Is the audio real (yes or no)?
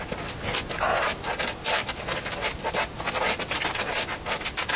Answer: yes